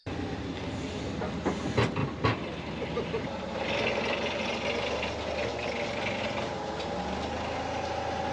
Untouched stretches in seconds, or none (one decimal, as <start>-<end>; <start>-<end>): 0.0-8.3